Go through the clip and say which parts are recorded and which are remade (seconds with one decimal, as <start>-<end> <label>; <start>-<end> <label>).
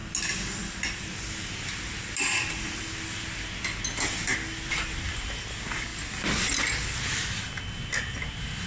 0.0-8.7 recorded